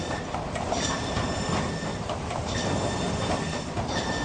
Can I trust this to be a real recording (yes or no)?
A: yes